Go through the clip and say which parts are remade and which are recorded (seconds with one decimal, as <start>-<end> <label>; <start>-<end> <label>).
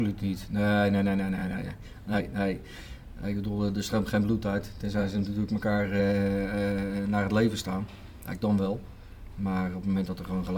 0.0-1.4 recorded; 1.4-2.2 remade; 2.2-5.0 recorded; 5.0-6.0 remade; 6.0-10.6 recorded